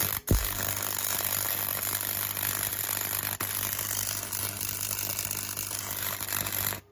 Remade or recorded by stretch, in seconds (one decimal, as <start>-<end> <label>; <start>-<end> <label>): 0.0-6.9 recorded